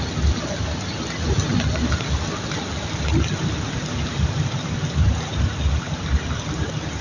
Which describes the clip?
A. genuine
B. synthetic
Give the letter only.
A